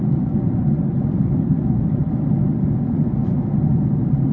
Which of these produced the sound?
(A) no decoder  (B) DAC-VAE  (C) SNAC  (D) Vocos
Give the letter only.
A